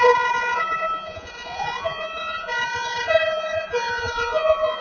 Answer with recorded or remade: remade